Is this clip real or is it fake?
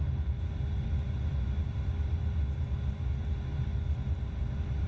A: real